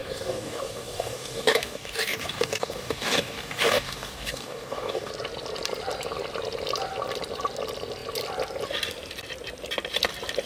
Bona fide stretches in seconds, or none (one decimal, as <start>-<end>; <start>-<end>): 5.1-10.5